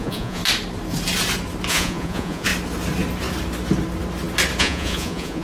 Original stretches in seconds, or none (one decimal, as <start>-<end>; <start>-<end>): 0.4-1.7; 2.5-4.6